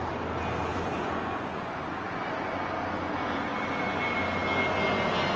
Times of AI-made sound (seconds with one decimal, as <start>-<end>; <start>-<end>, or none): 0.7-2.7